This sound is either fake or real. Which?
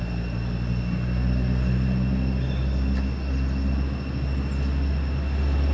real